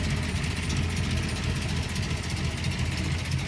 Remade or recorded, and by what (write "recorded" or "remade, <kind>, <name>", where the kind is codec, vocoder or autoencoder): recorded